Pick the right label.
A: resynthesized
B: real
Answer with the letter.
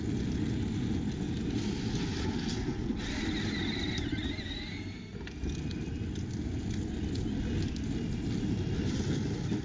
B